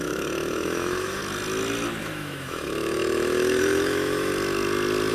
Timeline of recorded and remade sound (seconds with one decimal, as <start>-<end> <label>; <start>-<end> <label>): 0.0-1.2 remade; 1.2-2.0 recorded; 2.0-4.3 remade; 4.3-5.1 recorded